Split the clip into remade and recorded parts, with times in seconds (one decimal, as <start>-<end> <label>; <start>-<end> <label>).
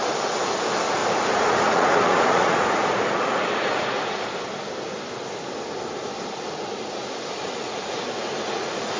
0.0-1.0 recorded; 1.0-4.4 remade; 4.4-7.6 recorded; 7.6-9.0 remade